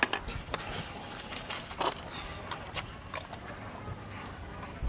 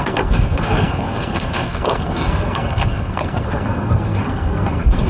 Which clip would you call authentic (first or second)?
first